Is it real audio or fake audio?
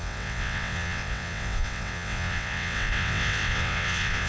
fake